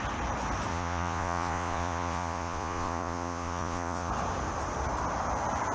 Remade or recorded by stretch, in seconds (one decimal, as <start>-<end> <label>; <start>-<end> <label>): 0.0-0.7 recorded; 0.7-4.1 remade; 4.1-5.7 recorded